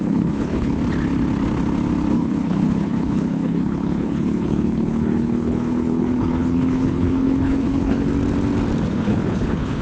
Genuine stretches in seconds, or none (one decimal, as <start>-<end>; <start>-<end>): 0.8-2.1; 8.1-8.9